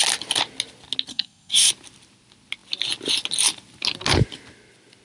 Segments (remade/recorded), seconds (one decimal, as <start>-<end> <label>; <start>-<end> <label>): 0.0-1.1 recorded; 1.1-1.7 remade; 1.7-5.0 recorded